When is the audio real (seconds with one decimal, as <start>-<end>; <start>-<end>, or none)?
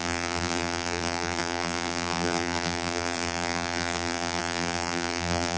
none